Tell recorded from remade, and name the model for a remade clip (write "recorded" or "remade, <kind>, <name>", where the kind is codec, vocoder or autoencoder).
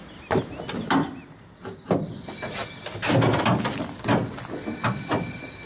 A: recorded